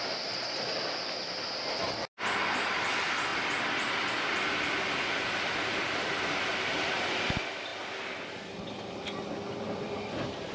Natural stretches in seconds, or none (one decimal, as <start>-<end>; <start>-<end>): 0.0-10.5